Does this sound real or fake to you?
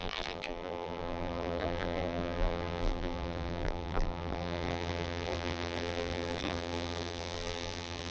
fake